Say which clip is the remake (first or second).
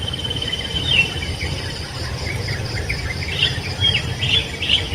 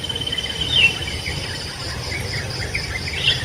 first